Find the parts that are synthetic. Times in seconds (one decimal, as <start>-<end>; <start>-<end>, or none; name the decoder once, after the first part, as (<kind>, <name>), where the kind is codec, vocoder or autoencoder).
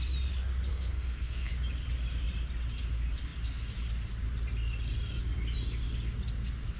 0.7-1.5 (codec, SNAC)